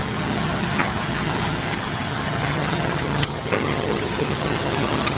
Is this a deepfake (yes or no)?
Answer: yes